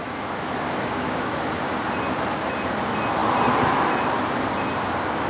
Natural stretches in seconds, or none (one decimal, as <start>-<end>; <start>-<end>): 1.4-5.3